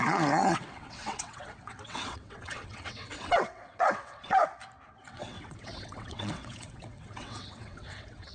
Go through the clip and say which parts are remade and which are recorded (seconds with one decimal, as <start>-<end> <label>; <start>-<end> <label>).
0.0-4.4 remade; 4.4-5.0 recorded; 5.0-8.3 remade